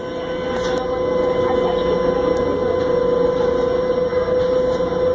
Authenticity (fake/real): real